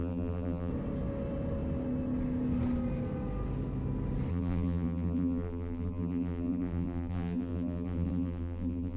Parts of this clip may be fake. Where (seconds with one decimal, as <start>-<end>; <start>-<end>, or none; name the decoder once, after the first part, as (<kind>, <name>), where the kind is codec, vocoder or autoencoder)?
0.0-0.7 (vocoder, BigVGAN v2); 4.3-9.0